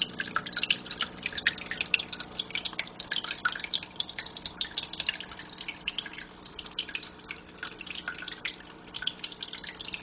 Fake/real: real